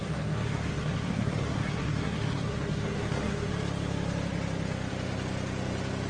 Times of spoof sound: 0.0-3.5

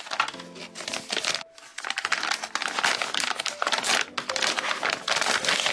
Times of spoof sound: none

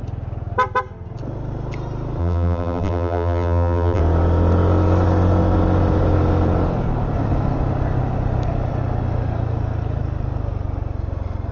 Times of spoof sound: 2.2-4.0

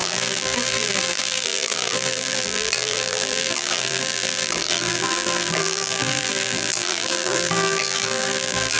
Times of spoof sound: 0.0-8.8

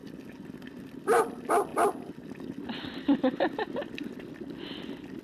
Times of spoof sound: none

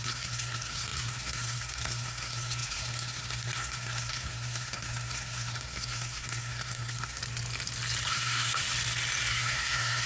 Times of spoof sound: 0.0-7.2; 8.1-8.6; 9.3-10.1

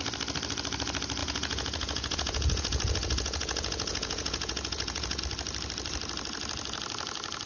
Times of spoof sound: 1.2-5.2

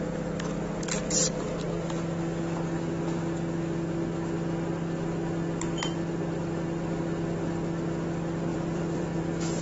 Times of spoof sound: 8.5-9.2